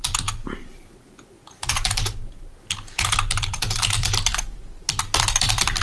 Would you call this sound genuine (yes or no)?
no